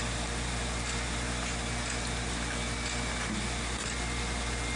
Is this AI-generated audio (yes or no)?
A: no